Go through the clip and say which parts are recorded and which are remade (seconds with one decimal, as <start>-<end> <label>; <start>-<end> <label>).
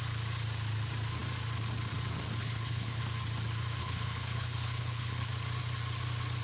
0.0-2.4 recorded; 2.4-3.0 remade; 3.0-3.8 recorded; 3.8-5.3 remade; 5.3-6.4 recorded